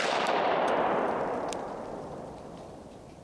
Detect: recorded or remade remade